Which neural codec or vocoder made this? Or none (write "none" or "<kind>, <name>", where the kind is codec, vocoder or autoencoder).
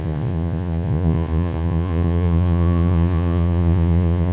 vocoder, Vocos